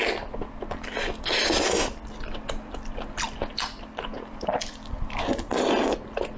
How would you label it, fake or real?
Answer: real